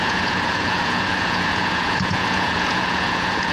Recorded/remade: remade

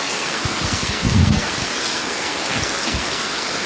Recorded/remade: remade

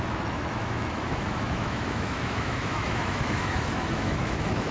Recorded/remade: remade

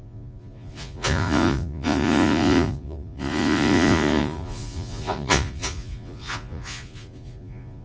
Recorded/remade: remade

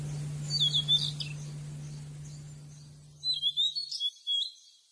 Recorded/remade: recorded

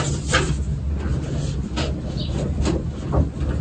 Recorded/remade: recorded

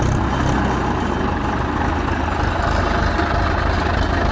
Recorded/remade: recorded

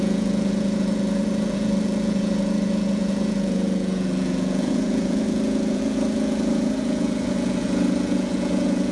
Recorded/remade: remade